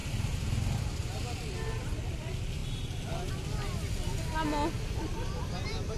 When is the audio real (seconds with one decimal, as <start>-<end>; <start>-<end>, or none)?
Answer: 0.0-6.0